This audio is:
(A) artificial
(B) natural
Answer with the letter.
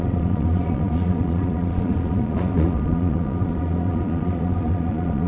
A